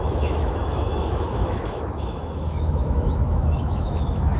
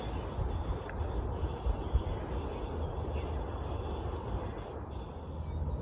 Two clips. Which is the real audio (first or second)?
second